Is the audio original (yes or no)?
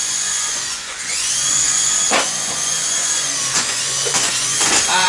no